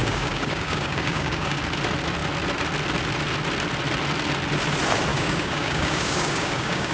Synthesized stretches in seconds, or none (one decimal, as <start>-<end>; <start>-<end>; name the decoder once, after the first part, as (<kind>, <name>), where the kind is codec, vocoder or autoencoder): 0.0-1.6 (codec, DAC); 5.1-6.9

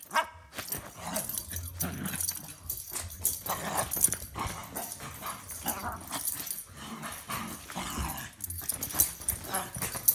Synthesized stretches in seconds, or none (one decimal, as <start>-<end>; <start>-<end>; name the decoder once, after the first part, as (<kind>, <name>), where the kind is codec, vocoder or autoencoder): none